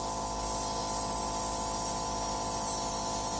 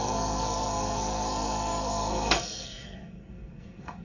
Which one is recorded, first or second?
first